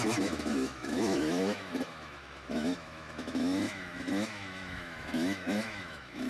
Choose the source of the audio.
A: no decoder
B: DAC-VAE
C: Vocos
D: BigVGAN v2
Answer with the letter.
B